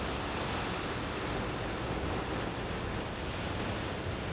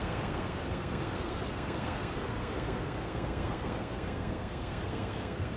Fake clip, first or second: second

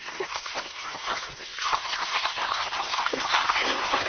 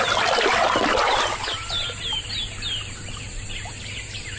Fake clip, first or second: first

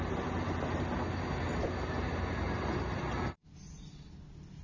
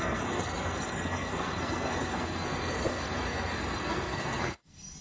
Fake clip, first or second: second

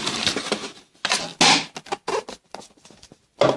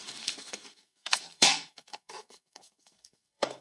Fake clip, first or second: second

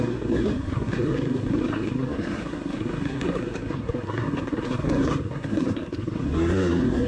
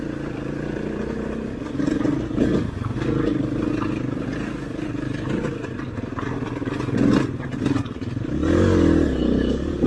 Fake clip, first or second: first